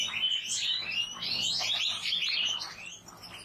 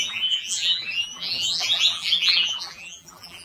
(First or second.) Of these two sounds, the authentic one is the first